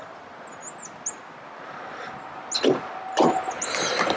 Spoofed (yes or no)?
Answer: no